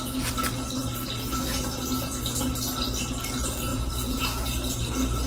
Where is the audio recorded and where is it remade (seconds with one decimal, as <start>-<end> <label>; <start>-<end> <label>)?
0.0-3.7 recorded; 3.7-4.7 remade; 4.7-5.3 recorded